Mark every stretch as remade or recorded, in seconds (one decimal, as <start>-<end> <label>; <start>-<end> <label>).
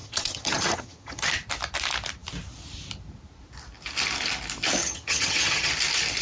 0.0-1.3 remade; 1.3-4.8 recorded; 4.8-5.7 remade; 5.7-6.2 recorded